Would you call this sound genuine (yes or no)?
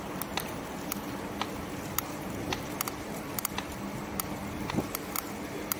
yes